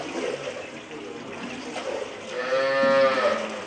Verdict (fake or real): real